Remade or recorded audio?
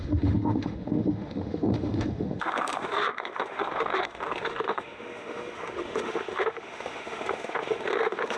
remade